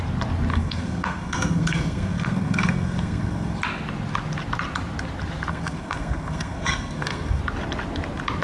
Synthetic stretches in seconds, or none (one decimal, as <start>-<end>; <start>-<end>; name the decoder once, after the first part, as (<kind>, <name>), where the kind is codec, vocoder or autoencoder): 0.5-3.6 (codec, SNAC); 5.5-7.4